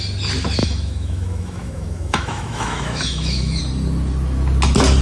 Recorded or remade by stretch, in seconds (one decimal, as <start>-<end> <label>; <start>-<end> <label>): 0.0-0.6 recorded; 0.6-3.6 remade; 3.6-5.0 recorded